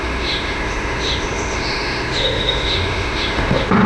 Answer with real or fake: fake